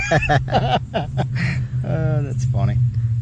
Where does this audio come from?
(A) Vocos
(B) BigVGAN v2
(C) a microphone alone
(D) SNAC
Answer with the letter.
C